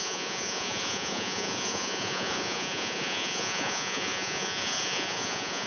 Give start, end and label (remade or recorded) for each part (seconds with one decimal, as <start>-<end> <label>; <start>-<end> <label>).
0.0-5.7 remade